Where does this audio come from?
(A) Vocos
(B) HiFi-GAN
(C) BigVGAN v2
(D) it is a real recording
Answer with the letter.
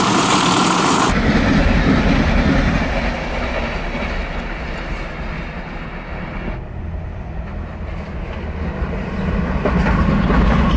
D